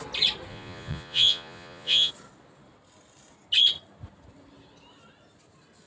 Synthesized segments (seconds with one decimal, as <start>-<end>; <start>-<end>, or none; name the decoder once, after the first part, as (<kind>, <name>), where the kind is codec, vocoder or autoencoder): 0.5-2.1 (vocoder, Vocos)